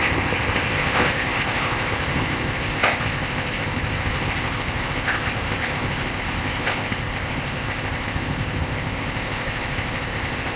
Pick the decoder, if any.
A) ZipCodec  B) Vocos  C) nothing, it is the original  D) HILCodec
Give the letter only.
A